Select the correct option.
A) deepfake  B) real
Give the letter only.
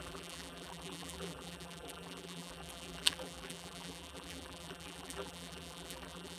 A